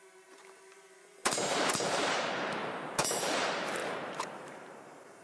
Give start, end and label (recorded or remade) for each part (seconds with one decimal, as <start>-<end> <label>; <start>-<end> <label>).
0.0-2.6 remade; 2.6-3.2 recorded; 3.2-5.2 remade